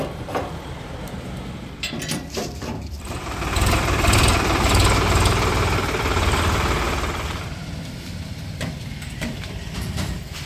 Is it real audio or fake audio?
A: fake